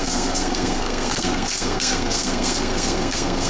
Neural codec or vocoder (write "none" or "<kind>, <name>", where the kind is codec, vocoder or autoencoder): codec, SNAC